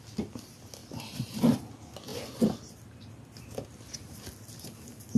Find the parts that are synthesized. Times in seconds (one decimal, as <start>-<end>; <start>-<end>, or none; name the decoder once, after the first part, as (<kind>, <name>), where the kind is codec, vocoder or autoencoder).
none